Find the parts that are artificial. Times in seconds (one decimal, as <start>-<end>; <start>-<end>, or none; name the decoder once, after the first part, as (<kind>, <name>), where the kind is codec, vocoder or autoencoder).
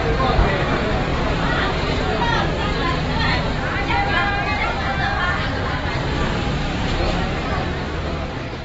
1.1-2.0 (vocoder, BigVGAN v2)